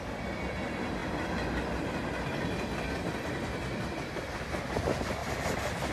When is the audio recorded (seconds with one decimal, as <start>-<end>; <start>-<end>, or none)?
0.0-5.9